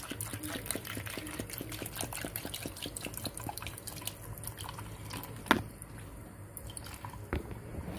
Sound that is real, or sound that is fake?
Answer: real